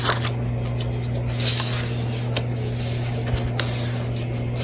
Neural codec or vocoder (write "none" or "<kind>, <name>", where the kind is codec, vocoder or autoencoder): none